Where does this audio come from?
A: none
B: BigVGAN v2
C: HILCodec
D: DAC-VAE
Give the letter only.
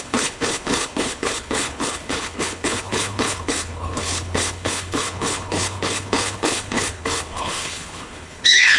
C